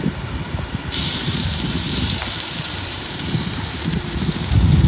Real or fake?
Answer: fake